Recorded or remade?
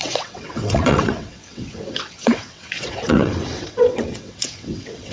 remade